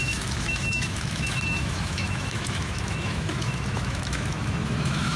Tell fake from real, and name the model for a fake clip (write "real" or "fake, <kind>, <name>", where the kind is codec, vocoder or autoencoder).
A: fake, autoencoder, DAC-VAE